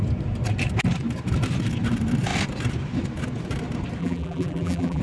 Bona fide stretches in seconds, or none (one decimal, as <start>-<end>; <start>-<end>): 0.0-4.0